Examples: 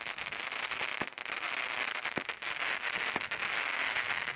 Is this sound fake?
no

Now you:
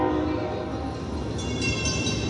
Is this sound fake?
no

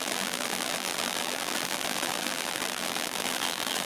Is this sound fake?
yes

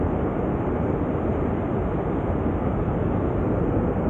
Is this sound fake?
no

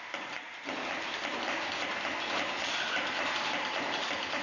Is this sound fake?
no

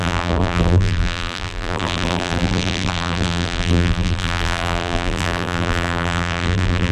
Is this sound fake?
yes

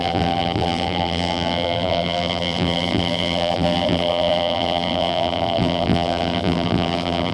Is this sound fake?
yes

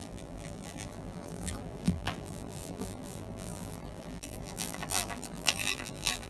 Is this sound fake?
yes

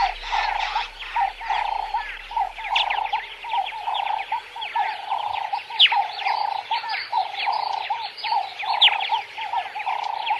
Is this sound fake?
no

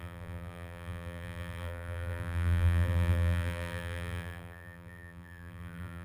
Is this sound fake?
yes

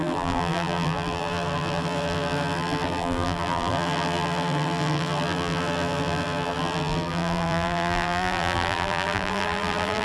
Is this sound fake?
yes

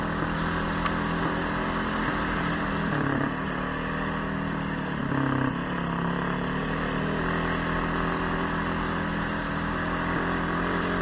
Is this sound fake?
no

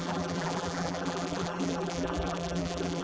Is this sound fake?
yes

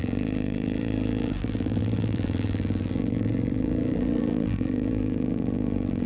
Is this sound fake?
yes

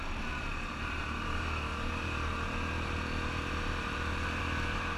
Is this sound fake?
yes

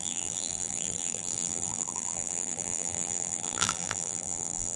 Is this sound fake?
yes